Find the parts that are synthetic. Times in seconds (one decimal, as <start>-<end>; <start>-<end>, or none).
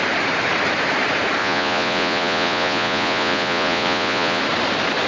1.4-4.4